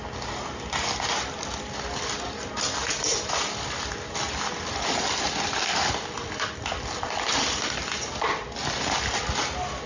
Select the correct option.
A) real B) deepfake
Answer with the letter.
A